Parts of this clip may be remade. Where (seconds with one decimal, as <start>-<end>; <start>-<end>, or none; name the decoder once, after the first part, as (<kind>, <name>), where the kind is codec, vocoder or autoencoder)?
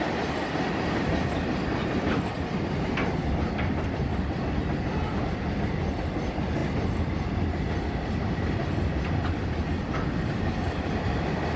none